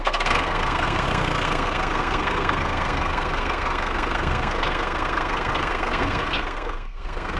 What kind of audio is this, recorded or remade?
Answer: remade